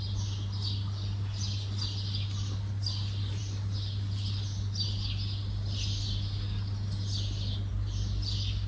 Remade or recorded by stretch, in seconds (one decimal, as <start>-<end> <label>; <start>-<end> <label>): 0.0-8.7 recorded